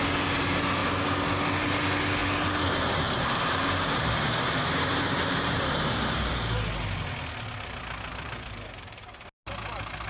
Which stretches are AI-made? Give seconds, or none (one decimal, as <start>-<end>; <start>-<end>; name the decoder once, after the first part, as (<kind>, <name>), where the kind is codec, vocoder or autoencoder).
2.2-6.3 (vocoder, BigVGAN v2); 8.1-9.1